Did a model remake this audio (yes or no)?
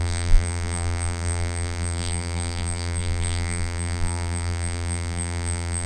yes